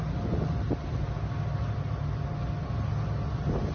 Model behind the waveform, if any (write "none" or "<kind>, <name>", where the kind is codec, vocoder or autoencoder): none